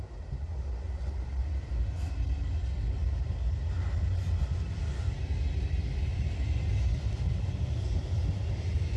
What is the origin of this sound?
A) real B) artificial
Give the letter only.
A